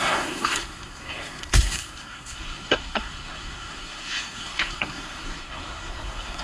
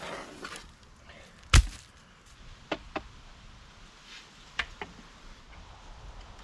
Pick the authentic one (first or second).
second